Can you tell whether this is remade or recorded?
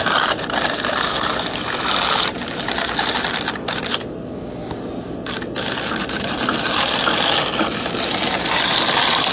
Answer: recorded